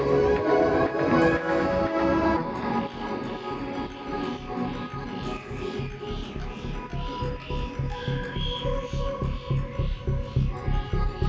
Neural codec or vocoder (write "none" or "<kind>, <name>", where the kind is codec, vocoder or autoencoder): none